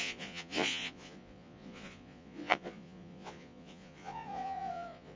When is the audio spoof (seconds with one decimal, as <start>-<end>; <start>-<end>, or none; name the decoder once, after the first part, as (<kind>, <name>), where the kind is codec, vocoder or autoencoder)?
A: 0.0-5.2 (vocoder, Vocos)